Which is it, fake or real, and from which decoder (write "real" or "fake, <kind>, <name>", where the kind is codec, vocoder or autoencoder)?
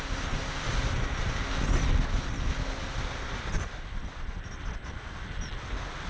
real